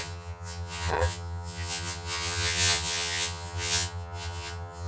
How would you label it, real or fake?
fake